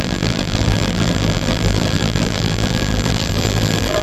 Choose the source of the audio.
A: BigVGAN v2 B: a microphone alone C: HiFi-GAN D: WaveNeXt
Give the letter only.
A